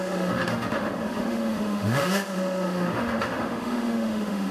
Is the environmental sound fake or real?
fake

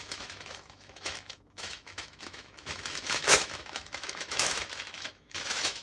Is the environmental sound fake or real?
fake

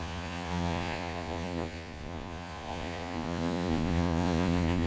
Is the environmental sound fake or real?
fake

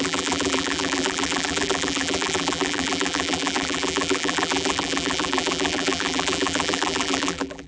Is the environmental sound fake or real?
fake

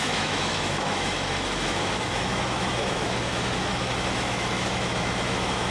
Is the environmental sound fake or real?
fake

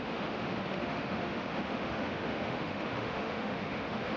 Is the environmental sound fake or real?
fake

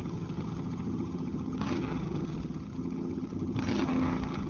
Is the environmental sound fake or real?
fake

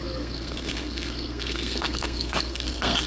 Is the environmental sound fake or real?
fake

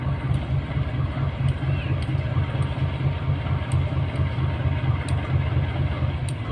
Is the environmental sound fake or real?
real